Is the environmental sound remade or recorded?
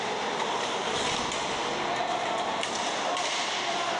recorded